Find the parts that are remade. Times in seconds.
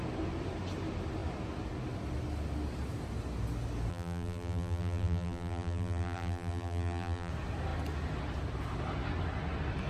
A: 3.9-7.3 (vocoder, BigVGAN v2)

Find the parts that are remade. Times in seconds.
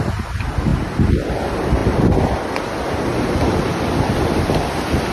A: 1.8-2.5 (vocoder, BigVGAN v2); 3.1-5.1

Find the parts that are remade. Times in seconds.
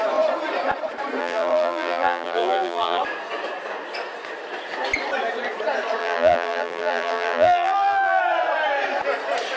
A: 1.2-3.0 (vocoder, BigVGAN v2); 6.0-8.2